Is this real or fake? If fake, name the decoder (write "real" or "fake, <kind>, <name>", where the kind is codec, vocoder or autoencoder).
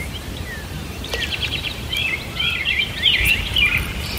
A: fake, vocoder, BigVGAN v2